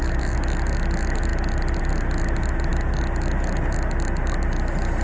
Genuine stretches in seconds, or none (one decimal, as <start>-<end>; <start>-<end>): 0.0-5.0